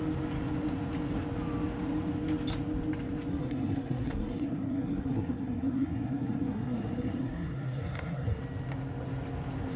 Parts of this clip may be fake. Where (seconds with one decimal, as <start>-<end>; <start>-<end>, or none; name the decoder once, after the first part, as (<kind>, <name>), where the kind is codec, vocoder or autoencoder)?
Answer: 3.3-8.4 (codec, SNAC)